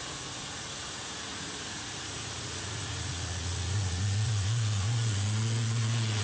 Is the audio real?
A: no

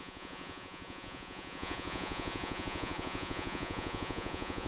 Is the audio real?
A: no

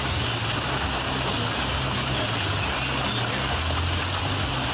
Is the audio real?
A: yes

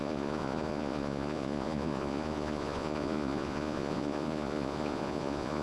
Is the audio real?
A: no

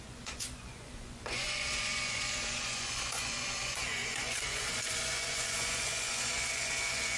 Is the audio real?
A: no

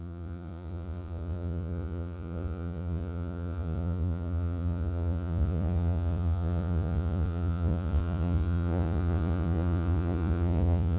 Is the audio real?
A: no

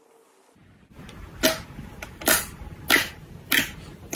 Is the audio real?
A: yes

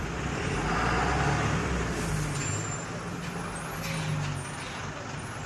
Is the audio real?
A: yes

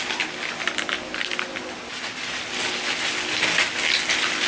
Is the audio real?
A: yes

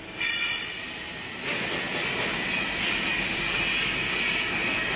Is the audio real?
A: yes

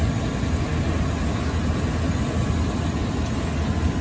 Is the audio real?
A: yes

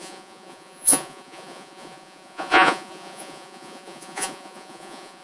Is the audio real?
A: no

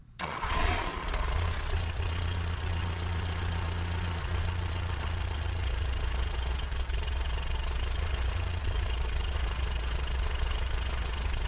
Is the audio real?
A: no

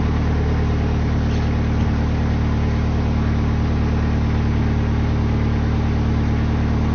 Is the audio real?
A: yes